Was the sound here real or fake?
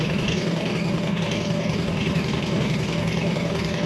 fake